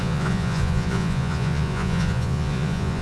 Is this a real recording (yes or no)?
no